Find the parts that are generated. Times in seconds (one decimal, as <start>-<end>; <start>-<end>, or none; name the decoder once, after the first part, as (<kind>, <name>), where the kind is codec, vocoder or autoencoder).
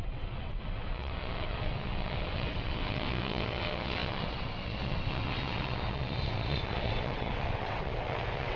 0.0-8.6 (vocoder, WaveNeXt)